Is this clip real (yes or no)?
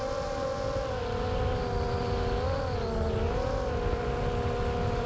yes